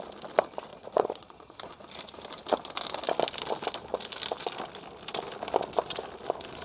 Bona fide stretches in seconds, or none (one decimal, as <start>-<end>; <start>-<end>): 0.0-0.7; 1.7-6.6